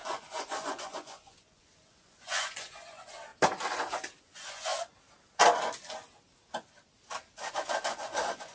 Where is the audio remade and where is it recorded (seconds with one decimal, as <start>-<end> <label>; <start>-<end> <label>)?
0.0-3.3 remade; 3.3-4.2 recorded; 4.2-4.7 remade; 4.7-7.5 recorded; 7.5-8.5 remade